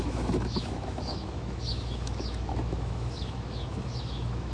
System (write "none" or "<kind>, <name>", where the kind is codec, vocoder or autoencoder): autoencoder, DAC-VAE